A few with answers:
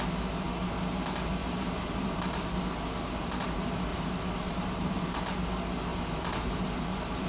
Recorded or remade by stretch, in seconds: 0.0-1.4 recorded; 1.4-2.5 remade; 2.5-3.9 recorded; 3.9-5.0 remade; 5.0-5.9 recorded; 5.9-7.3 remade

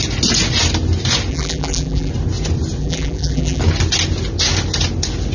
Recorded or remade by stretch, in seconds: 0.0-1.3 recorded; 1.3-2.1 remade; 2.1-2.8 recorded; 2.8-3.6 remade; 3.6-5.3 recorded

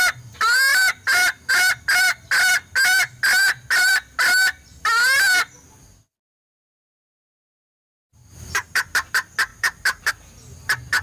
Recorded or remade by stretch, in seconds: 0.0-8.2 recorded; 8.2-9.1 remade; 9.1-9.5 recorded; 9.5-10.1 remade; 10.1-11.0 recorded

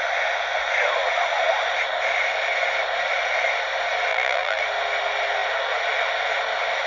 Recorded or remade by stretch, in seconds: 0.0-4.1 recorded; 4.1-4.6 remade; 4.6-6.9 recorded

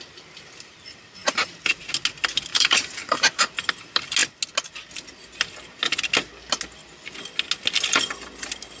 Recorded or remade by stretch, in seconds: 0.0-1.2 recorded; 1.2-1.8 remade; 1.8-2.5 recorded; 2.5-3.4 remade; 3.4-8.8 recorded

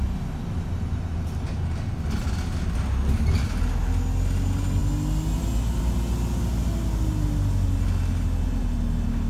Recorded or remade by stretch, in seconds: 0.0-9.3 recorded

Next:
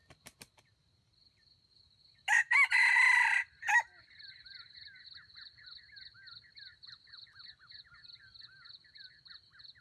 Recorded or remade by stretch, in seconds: 0.0-9.8 recorded